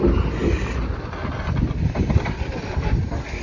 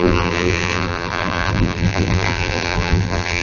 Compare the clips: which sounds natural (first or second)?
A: first